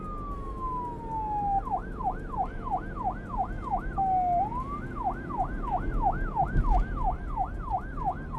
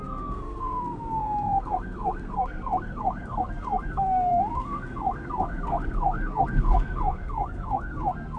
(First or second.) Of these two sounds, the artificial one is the second